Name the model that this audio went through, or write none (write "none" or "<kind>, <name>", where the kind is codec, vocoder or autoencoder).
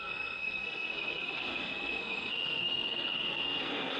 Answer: codec, SNAC